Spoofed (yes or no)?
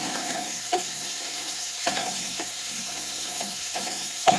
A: yes